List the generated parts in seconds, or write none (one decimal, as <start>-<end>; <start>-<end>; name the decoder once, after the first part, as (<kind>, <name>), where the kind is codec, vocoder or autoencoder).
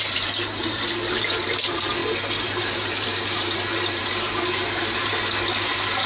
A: 0.0-5.2 (vocoder, BigVGAN v2)